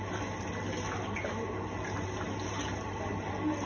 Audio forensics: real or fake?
real